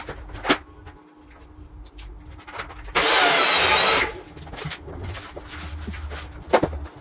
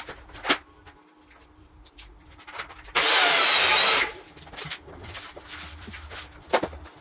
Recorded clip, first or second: first